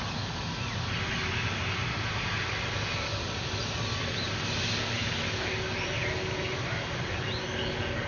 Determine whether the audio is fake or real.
real